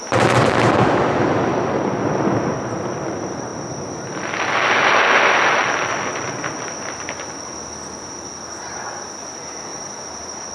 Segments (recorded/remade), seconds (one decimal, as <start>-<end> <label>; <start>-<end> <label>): 0.0-9.7 recorded; 9.7-10.5 remade